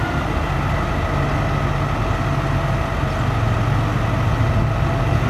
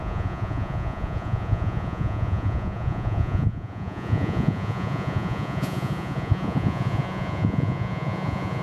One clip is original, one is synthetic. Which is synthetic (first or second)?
second